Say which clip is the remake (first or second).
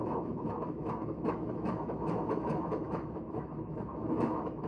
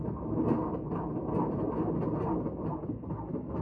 first